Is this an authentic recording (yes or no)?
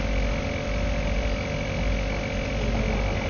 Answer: yes